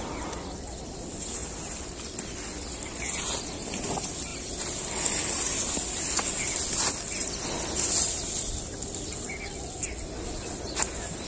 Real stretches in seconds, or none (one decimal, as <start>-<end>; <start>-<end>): 0.0-11.3